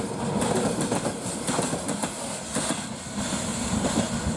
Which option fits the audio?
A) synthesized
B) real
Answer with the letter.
B